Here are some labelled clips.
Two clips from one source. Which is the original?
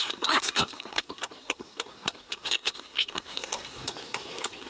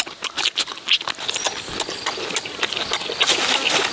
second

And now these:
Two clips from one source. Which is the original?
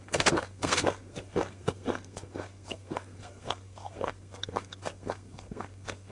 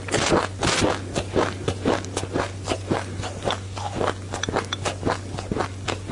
second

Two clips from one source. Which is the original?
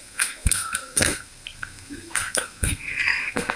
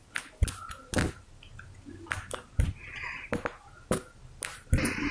second